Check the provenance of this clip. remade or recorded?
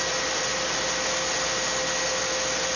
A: recorded